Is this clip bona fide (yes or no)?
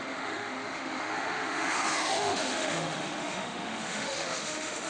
no